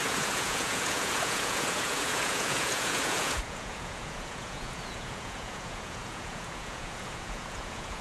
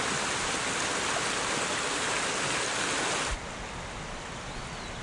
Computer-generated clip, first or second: first